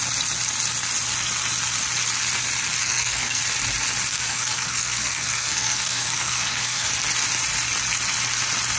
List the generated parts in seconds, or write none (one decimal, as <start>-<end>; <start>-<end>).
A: 2.8-3.4; 4.1-6.9